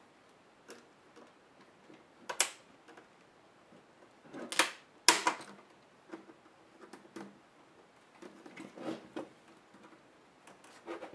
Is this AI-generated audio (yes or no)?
no